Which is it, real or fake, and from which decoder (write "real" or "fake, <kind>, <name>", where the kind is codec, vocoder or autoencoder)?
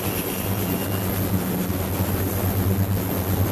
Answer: real